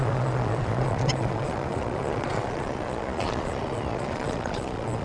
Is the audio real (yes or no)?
no